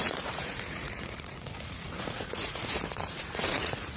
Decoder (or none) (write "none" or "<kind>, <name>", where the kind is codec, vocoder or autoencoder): vocoder, Vocos